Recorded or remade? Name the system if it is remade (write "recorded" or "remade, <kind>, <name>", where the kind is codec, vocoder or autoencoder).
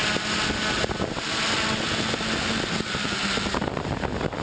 recorded